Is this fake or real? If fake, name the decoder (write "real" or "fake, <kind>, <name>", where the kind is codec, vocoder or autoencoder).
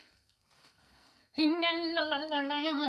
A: fake, codec, SNAC